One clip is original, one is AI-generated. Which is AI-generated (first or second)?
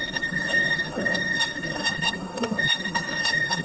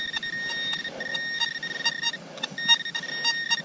first